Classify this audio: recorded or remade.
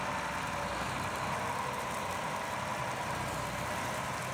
recorded